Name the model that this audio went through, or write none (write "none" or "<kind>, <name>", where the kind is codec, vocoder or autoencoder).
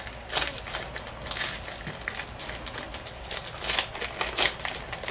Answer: none